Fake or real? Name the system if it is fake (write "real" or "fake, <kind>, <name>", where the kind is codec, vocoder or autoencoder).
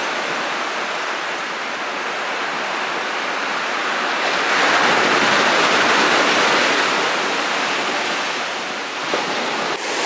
real